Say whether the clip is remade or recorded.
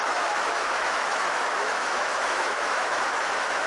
remade